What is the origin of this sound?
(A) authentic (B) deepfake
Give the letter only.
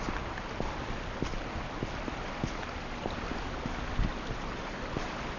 A